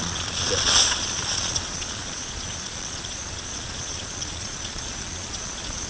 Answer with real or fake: fake